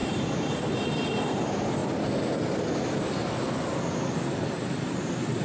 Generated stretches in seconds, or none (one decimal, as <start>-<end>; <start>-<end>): 0.0-1.8; 5.0-5.4